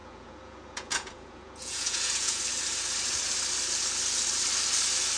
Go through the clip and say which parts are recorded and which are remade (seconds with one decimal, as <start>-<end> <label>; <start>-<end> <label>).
0.0-2.4 remade; 2.4-5.2 recorded